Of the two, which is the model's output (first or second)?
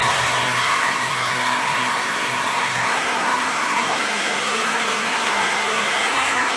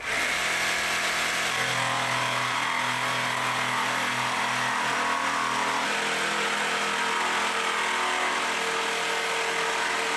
first